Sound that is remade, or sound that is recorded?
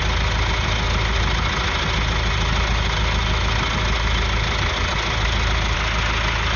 recorded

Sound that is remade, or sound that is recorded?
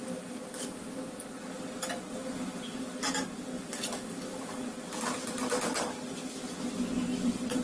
recorded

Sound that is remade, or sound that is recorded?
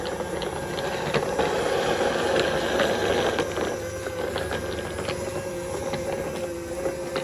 recorded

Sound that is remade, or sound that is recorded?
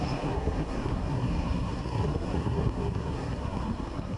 remade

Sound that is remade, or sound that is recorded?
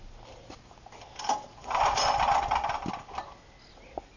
recorded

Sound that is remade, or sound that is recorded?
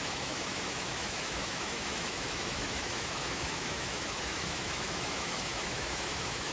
remade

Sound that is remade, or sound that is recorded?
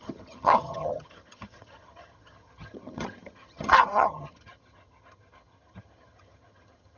remade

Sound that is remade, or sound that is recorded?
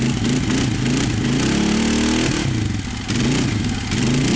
recorded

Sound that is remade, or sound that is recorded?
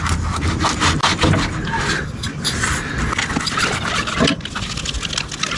recorded